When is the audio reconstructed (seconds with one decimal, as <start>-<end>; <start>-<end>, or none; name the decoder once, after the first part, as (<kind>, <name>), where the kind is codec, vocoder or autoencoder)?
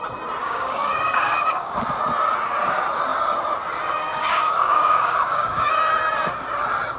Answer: 0.4-1.7 (codec, DAC); 4.0-5.7